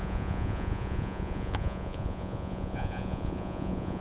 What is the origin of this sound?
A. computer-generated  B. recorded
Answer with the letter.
A